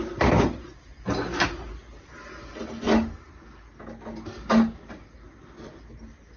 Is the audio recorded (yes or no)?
yes